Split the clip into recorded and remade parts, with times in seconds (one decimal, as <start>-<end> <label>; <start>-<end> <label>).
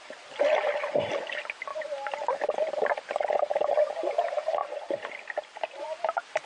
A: 0.0-6.5 recorded